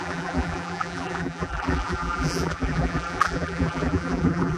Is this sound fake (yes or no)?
yes